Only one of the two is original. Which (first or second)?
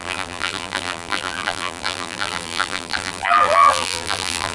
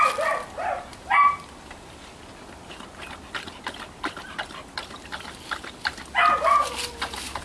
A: second